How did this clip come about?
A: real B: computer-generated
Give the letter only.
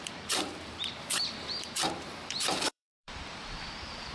B